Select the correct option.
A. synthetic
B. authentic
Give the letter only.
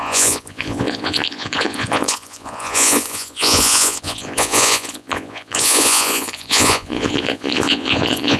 A